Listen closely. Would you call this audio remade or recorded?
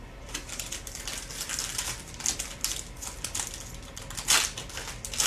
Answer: recorded